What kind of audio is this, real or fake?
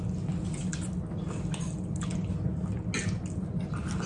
real